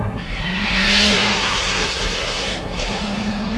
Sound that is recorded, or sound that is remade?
remade